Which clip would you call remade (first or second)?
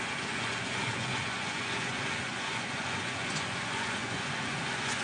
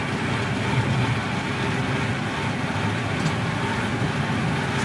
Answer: first